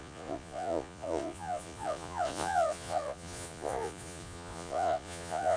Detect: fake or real fake